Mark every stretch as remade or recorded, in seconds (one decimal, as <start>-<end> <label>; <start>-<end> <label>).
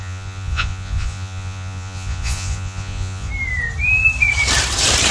0.0-3.3 remade; 3.3-5.1 recorded